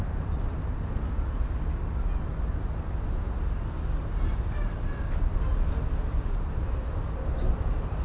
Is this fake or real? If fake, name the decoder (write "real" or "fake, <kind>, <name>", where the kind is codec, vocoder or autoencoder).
real